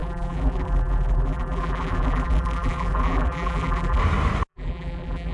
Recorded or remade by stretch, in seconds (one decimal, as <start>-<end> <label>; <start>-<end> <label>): 0.0-4.0 remade; 4.0-4.5 recorded; 4.5-5.3 remade